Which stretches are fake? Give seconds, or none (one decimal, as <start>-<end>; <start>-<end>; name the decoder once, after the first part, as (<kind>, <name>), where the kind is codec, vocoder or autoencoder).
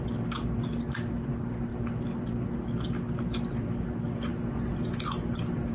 none